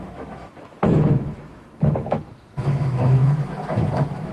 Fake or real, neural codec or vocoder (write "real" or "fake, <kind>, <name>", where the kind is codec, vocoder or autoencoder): fake, autoencoder, DAC-VAE